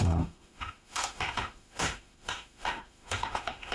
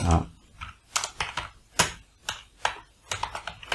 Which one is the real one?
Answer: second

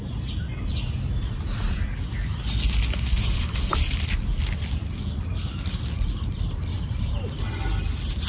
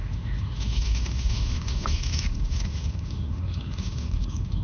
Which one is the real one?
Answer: first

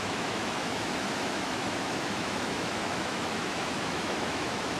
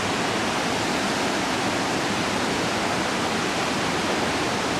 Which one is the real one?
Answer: second